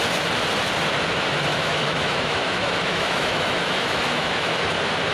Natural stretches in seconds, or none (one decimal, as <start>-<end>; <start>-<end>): 0.0-1.5; 4.6-5.1